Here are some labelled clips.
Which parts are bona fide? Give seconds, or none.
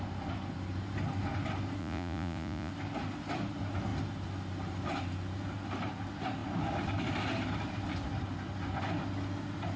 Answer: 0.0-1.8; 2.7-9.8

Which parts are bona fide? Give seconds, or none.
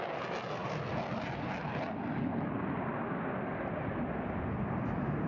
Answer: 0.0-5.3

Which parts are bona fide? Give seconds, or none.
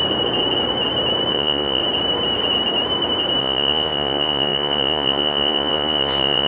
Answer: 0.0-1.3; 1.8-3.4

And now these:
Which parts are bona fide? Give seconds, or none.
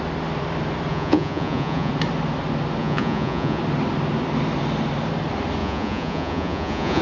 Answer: 0.0-0.9; 1.9-2.8; 3.6-5.6